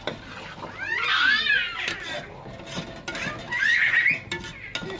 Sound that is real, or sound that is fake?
real